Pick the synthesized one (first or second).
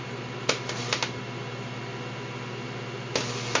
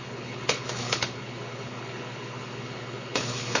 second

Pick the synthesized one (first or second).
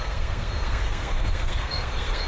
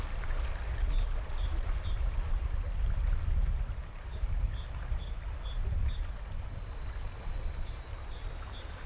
first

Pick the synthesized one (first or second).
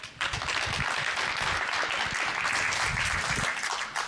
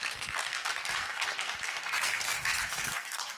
second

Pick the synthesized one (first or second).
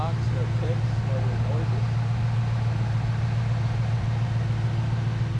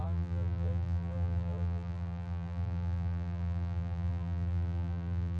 second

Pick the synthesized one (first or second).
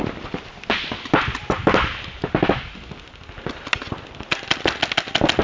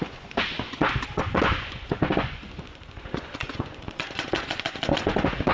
second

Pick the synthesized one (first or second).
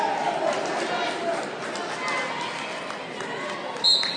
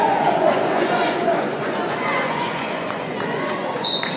second